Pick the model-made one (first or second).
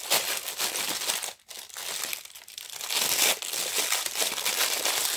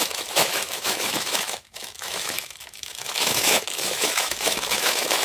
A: second